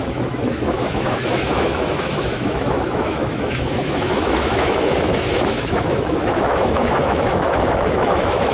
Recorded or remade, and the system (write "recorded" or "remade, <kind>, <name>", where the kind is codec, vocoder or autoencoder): remade, autoencoder, DAC-VAE